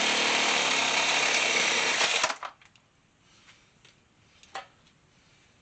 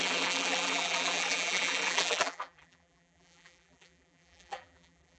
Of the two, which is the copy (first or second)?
second